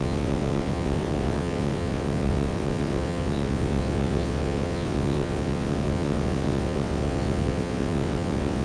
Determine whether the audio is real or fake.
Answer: fake